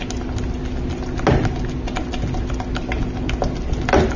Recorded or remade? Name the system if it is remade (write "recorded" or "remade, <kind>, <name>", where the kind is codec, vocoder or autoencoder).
recorded